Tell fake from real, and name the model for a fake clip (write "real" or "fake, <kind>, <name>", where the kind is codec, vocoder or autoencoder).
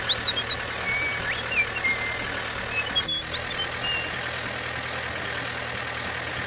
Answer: real